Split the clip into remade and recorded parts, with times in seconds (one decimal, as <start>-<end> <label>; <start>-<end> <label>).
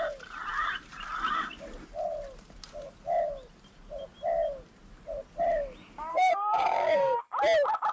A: 0.0-6.1 recorded; 6.1-7.2 remade; 7.2-7.9 recorded